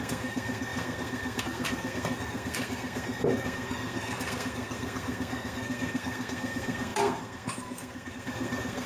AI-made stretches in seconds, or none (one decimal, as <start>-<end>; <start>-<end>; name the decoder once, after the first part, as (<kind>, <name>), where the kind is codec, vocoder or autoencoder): 0.0-8.9 (codec, SNAC)